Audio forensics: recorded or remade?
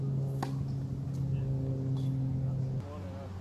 recorded